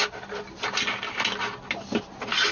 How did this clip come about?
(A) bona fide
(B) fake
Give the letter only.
A